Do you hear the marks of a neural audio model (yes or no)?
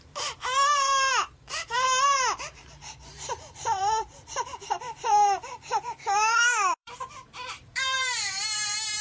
yes